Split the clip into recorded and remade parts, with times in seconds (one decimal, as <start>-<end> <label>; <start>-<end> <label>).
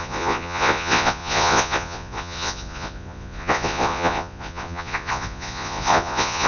0.0-6.5 remade